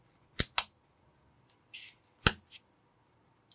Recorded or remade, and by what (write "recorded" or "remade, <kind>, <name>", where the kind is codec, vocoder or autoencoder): recorded